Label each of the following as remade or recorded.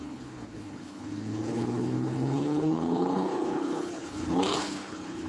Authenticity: remade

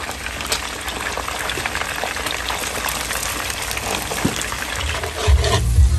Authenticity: recorded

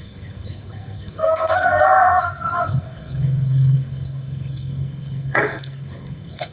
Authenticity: remade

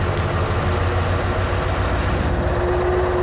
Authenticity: recorded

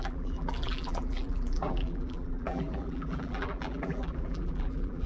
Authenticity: remade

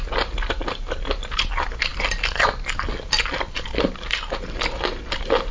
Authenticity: recorded